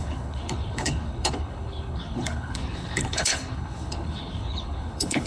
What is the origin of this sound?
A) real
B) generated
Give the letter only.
B